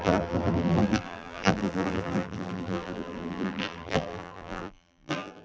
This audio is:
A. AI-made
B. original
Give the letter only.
A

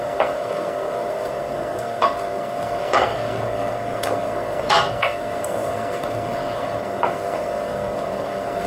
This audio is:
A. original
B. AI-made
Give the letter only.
B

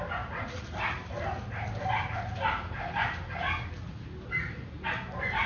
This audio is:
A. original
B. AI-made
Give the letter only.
A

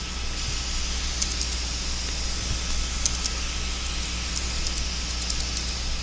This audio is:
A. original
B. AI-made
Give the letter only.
A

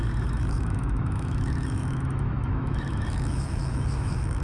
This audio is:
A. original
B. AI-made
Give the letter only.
B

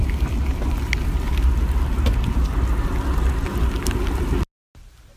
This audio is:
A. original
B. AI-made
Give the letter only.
A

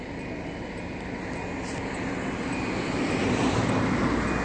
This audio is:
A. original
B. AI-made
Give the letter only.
A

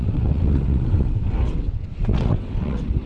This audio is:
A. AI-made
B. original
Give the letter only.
A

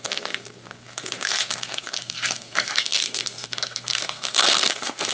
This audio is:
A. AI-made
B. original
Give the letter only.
A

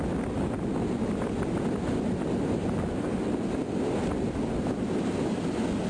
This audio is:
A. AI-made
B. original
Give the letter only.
B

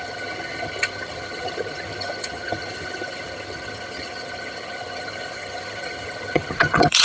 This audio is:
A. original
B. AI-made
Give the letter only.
B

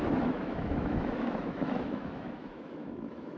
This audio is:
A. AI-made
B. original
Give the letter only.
A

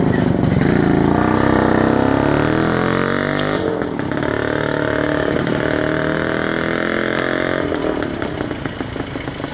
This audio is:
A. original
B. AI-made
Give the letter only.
A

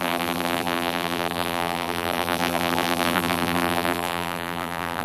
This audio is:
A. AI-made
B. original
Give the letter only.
A